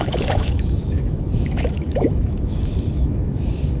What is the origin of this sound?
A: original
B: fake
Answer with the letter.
B